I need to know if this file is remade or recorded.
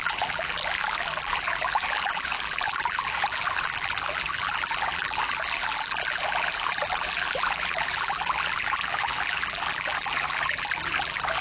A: remade